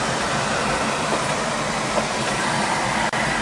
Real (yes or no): no